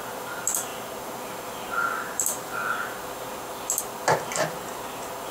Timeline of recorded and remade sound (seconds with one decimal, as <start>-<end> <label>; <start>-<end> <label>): 0.0-5.3 recorded